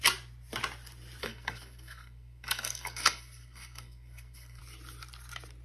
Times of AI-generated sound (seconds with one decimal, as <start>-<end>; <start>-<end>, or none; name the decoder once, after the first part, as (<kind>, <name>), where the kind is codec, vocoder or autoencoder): 1.2-4.6 (codec, SNAC)